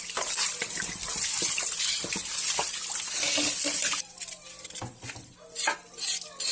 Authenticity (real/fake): real